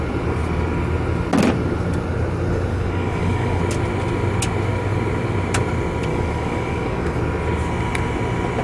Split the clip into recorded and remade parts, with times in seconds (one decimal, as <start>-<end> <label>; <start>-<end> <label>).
0.0-2.7 recorded; 2.7-3.6 remade; 3.6-6.1 recorded; 6.1-7.2 remade; 7.2-8.6 recorded